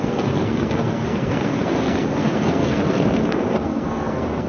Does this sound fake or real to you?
fake